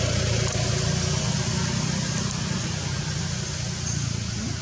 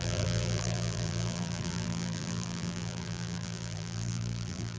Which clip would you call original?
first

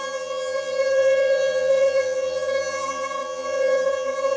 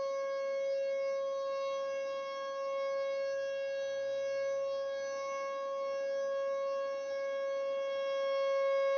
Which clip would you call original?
second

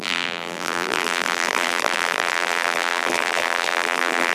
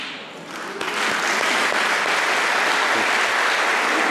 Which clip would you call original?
second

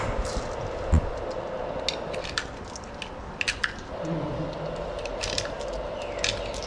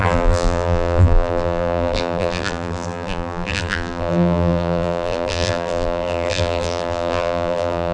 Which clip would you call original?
first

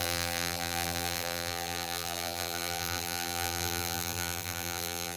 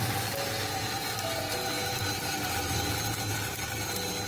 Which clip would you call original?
second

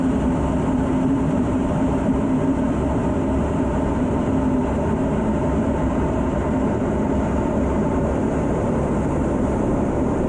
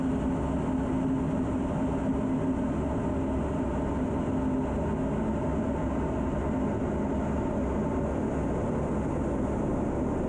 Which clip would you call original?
second